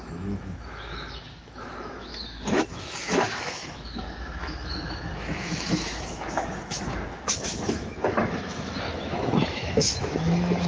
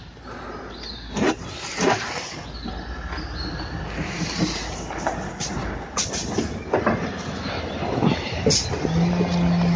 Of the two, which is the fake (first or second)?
first